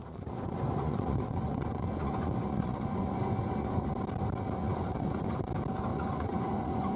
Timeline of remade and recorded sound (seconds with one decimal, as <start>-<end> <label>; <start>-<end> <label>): 0.0-3.9 remade; 3.9-4.6 recorded; 4.6-5.5 remade; 5.5-5.9 recorded; 5.9-7.0 remade